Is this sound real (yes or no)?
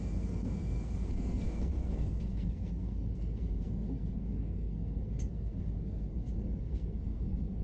no